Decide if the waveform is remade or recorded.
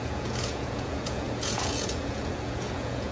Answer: remade